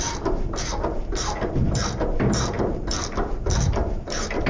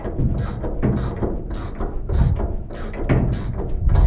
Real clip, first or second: second